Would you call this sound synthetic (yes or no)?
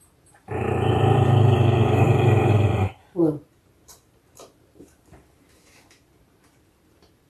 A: yes